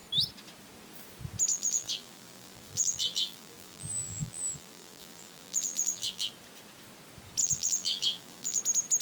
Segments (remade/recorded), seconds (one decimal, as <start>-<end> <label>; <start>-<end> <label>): 0.0-1.5 recorded; 1.5-6.3 remade; 6.3-7.4 recorded; 7.4-8.6 remade; 8.6-9.0 recorded